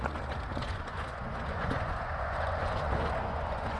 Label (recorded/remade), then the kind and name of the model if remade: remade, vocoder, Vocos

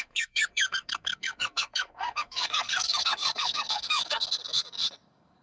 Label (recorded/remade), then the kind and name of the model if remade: remade, codec, SNAC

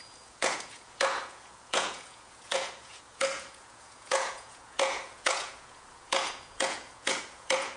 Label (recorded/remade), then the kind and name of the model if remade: remade, vocoder, Vocos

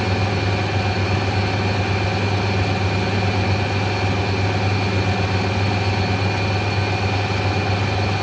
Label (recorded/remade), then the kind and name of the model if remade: recorded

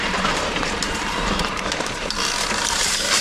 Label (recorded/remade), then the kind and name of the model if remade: remade, vocoder, BigVGAN v2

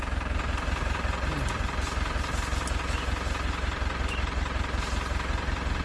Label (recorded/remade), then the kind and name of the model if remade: recorded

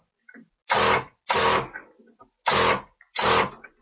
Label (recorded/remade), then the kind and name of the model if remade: recorded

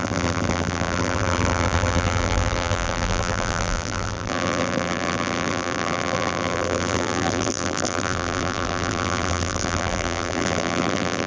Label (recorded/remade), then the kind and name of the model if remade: remade, vocoder, BigVGAN v2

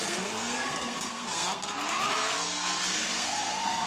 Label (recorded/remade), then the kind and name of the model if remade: remade, codec, SNAC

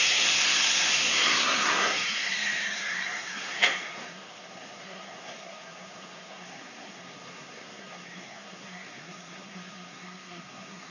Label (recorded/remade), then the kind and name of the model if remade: remade, codec, SNAC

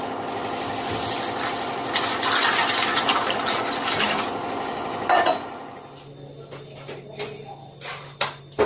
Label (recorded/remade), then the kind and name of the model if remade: recorded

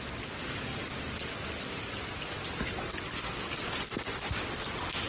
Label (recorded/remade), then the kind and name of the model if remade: recorded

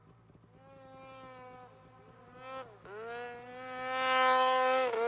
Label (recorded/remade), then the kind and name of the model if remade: recorded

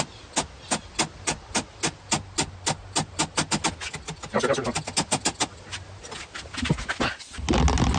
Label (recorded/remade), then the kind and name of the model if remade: recorded